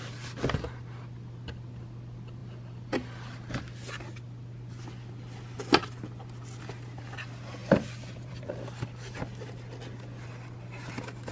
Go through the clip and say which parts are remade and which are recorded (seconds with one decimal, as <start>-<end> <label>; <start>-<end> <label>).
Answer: 0.0-2.4 recorded; 2.4-3.6 remade; 3.6-7.6 recorded; 7.6-8.5 remade; 8.5-11.3 recorded